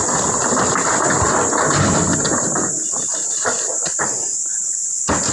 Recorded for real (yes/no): yes